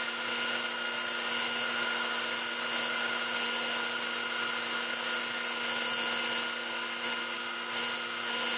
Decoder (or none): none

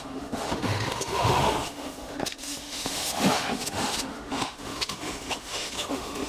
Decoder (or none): autoencoder, DAC-VAE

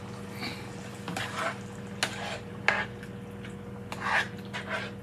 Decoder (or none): none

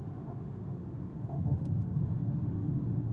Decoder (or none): autoencoder, DAC-VAE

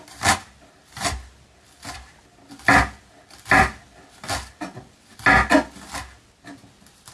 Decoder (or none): none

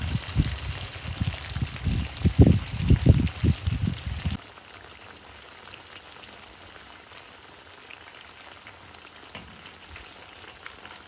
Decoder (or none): none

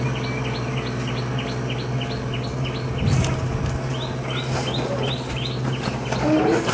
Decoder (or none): none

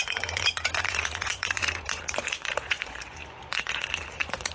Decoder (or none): vocoder, Vocos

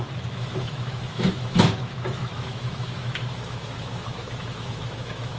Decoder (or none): autoencoder, DAC-VAE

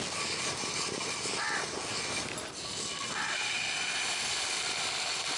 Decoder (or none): none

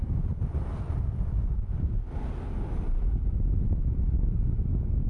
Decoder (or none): none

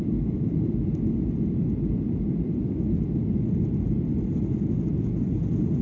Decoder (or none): none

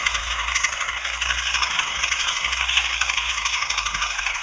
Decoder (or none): codec, SNAC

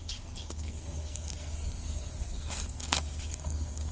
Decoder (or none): codec, SNAC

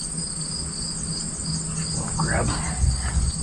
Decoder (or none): none